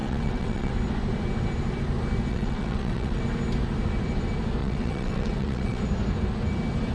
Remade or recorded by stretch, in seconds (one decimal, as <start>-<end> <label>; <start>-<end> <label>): 0.0-0.7 remade; 0.7-2.3 recorded; 2.3-3.2 remade; 3.2-4.6 recorded; 4.6-5.8 remade; 5.8-6.9 recorded